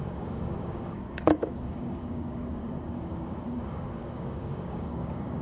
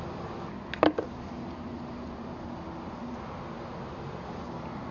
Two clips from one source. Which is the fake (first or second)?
first